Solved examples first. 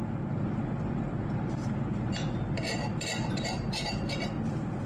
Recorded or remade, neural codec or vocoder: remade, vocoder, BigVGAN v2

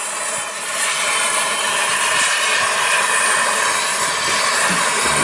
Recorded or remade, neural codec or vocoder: remade, vocoder, BigVGAN v2